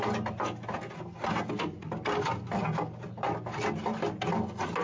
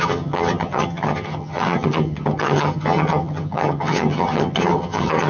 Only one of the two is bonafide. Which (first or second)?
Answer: first